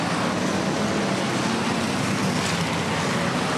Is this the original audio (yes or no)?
yes